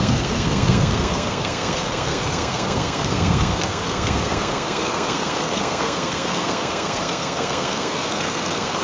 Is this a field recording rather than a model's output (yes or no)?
no